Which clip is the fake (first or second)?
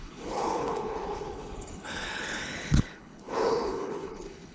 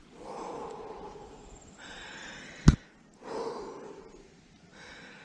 first